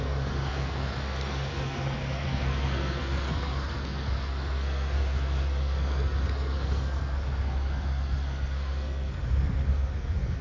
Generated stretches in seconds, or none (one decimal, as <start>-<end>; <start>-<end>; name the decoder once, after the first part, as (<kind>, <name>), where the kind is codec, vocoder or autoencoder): 0.0-10.4 (codec, SNAC)